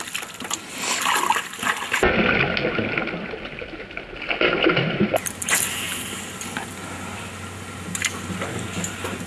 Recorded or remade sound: recorded